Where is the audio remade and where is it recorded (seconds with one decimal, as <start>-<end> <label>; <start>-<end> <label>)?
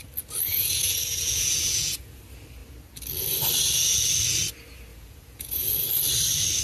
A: 0.0-0.5 recorded; 0.5-2.2 remade; 2.2-4.9 recorded; 4.9-5.6 remade; 5.6-6.6 recorded